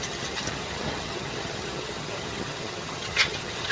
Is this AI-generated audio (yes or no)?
yes